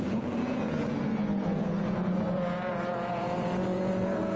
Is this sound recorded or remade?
remade